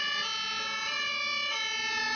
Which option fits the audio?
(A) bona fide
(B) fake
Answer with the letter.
A